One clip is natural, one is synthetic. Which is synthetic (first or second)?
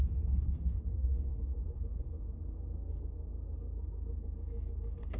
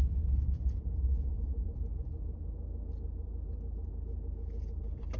first